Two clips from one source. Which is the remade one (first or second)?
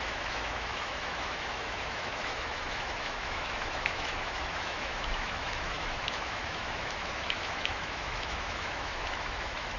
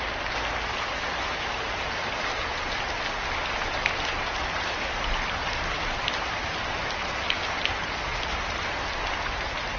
first